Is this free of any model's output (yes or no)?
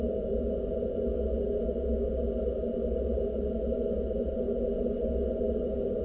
yes